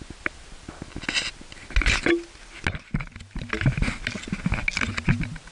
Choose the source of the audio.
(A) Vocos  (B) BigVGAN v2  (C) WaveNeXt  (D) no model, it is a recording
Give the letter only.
D